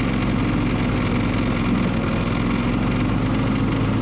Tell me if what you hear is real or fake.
real